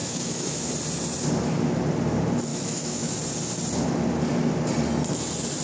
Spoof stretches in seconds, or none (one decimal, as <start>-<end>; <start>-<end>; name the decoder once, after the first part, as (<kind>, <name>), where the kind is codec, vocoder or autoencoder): 0.0-0.7 (autoencoder, DAC-VAE); 2.5-3.1